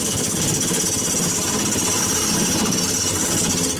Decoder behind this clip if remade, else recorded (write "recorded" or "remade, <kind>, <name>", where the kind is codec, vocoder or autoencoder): recorded